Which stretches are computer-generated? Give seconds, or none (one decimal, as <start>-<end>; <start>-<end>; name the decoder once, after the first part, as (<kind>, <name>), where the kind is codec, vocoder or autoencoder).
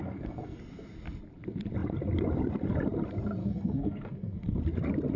0.0-0.6 (codec, SNAC); 3.4-4.6